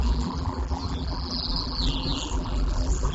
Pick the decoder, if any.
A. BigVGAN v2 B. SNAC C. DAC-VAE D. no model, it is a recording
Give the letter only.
A